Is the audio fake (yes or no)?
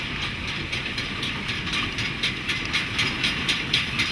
no